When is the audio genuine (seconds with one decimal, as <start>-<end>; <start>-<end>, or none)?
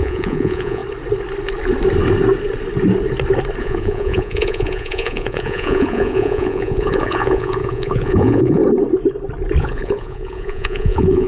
0.8-3.6; 8.6-9.6